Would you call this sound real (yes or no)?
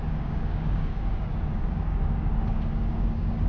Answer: no